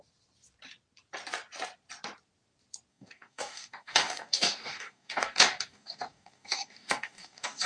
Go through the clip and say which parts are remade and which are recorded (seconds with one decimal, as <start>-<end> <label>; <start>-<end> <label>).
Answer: 0.0-2.9 recorded; 2.9-7.7 remade